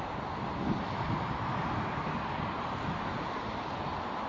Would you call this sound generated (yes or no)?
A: no